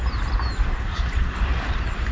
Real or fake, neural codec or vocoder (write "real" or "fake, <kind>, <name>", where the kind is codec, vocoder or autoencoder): real